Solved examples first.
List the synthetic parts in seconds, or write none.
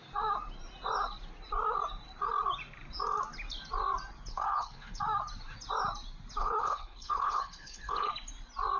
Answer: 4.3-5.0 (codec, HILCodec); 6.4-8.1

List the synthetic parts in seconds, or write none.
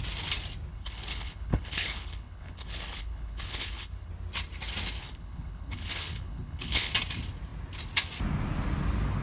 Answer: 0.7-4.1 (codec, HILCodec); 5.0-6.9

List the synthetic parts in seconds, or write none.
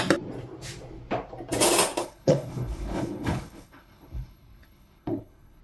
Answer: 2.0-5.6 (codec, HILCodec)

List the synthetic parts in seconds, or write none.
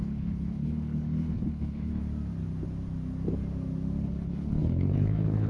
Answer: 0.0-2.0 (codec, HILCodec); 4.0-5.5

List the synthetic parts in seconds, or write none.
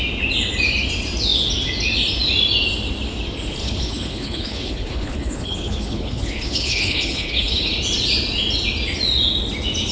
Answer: 3.6-7.7 (codec, HILCodec)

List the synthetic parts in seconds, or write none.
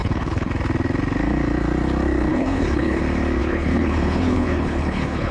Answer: 0.0-0.5 (codec, HILCodec); 2.3-3.0; 3.4-5.3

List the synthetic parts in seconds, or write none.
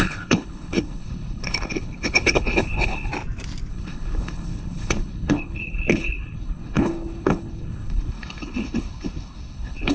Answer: 0.0-3.1 (codec, HILCodec); 3.7-9.9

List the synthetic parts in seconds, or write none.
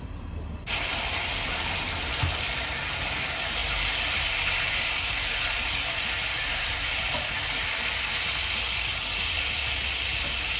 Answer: none